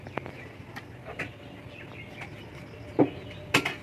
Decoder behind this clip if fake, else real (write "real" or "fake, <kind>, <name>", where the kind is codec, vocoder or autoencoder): real